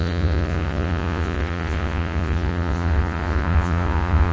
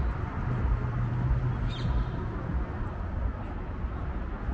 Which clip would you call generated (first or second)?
first